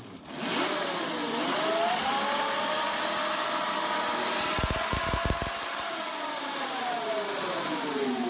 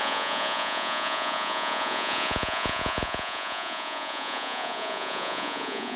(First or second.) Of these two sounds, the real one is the first